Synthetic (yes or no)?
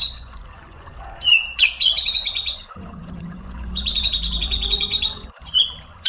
yes